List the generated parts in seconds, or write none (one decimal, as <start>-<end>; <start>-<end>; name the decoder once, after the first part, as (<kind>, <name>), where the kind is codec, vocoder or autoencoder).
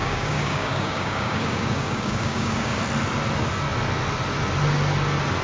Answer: 0.0-2.8 (codec, DAC)